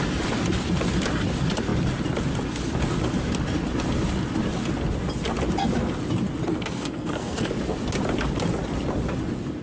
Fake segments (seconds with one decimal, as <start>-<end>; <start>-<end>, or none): 6.5-7.5